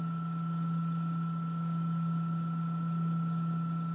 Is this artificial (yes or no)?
no